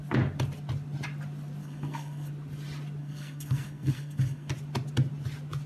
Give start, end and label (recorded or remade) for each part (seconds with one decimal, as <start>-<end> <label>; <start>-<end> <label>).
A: 0.0-1.6 recorded; 1.6-2.3 remade; 2.3-3.0 recorded; 3.0-4.5 remade; 4.5-5.7 recorded